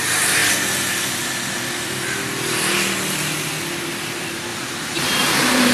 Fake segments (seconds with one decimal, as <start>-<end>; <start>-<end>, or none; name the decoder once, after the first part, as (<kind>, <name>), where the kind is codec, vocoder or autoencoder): 0.0-0.4 (vocoder, BigVGAN v2); 3.8-5.7